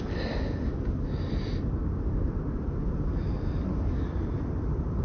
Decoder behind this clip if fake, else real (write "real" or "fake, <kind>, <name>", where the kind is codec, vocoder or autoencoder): real